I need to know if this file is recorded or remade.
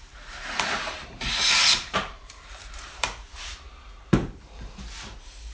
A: remade